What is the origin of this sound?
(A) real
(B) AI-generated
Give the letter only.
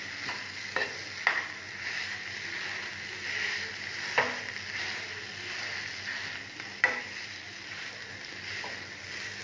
A